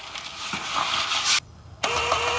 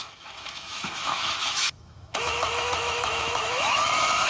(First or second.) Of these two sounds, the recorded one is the first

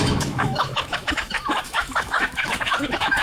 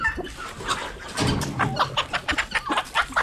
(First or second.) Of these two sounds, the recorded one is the second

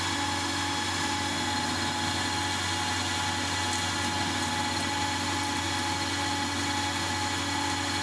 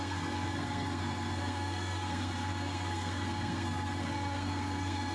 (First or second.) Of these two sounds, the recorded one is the first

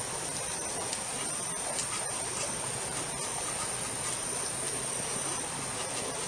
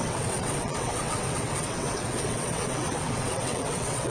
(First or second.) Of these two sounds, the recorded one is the first